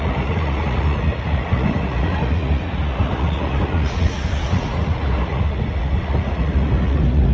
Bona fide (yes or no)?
no